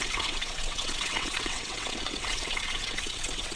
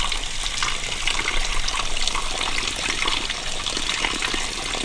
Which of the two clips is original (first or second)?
second